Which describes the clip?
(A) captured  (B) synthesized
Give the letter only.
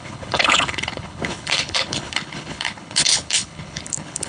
B